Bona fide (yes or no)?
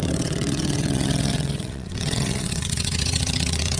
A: no